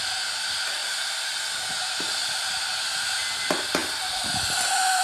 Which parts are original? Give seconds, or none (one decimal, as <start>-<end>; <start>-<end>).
0.0-5.0